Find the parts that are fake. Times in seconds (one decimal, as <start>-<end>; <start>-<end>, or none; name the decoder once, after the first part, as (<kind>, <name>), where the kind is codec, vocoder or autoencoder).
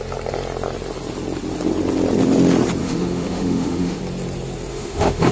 2.8-4.0 (autoencoder, DAC-VAE); 4.7-5.3